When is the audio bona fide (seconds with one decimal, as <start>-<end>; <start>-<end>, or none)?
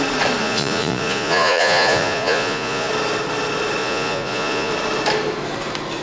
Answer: 0.0-0.4; 2.9-3.8; 4.7-6.0